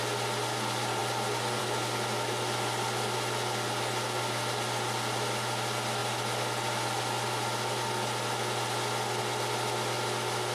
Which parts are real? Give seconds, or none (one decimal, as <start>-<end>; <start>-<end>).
0.0-10.5